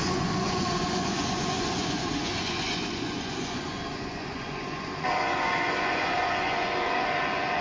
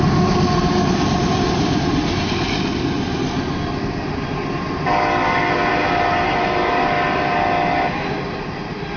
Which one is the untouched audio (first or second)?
second